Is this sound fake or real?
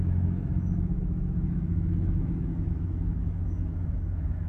fake